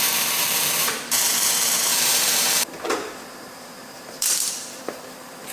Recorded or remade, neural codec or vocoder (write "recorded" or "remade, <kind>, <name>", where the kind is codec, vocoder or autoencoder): remade, vocoder, BigVGAN v2